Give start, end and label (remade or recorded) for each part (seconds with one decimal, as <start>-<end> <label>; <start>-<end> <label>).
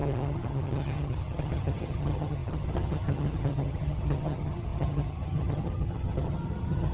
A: 0.0-6.9 remade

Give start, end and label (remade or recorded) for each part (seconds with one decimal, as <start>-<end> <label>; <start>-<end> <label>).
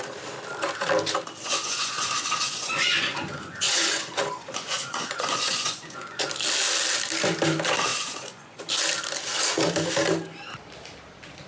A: 0.0-1.4 recorded; 1.4-6.3 remade; 6.3-7.9 recorded; 7.9-8.6 remade; 8.6-11.5 recorded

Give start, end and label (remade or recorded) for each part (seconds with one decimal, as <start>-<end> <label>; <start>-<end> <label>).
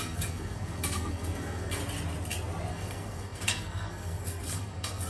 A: 0.0-1.8 remade; 1.8-2.7 recorded; 2.7-5.1 remade